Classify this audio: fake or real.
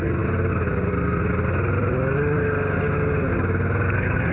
real